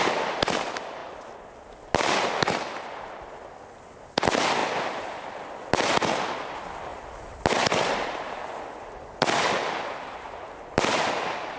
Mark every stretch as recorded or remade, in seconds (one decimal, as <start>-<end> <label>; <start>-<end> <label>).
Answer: 0.0-1.0 recorded; 1.0-1.5 remade; 1.5-6.9 recorded; 6.9-7.4 remade; 7.4-11.6 recorded